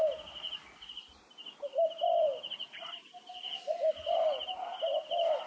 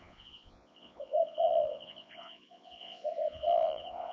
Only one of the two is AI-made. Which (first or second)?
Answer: second